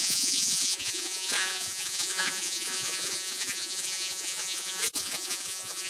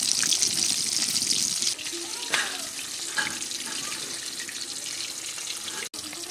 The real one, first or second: second